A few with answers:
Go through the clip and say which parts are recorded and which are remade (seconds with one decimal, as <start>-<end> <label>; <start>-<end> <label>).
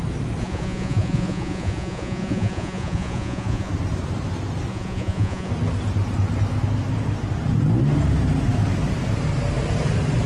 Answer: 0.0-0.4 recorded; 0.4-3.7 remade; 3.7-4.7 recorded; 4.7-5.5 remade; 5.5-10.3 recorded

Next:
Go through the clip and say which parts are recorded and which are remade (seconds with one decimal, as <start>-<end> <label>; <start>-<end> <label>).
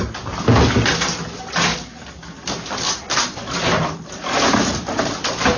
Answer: 0.0-5.6 recorded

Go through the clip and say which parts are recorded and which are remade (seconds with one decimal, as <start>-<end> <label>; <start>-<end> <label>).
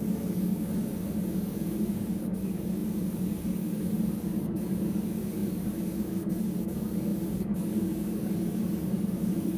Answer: 0.0-9.6 remade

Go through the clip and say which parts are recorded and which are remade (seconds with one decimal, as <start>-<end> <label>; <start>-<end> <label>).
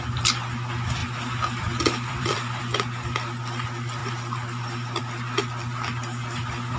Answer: 0.0-1.0 recorded; 1.0-2.6 remade; 2.6-4.0 recorded; 4.0-5.0 remade; 5.0-6.8 recorded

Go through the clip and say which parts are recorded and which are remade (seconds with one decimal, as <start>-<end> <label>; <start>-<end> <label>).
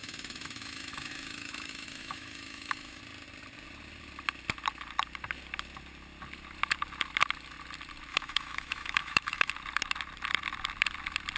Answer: 0.0-3.0 remade; 3.0-8.1 recorded; 8.1-9.5 remade; 9.5-11.4 recorded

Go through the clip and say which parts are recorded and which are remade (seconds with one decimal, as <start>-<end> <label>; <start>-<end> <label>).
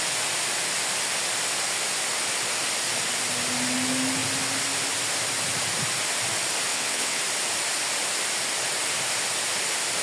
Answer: 0.0-6.7 recorded; 6.7-7.2 remade; 7.2-10.0 recorded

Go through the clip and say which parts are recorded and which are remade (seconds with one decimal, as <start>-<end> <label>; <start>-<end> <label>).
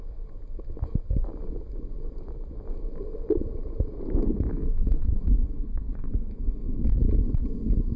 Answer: 0.0-4.5 recorded; 4.5-6.8 remade; 6.8-8.0 recorded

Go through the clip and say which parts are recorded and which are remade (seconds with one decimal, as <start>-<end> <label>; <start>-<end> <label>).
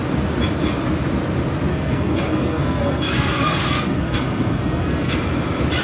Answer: 0.0-1.7 recorded; 1.7-5.2 remade; 5.2-5.8 recorded